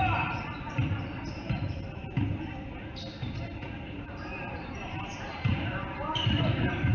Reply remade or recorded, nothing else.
remade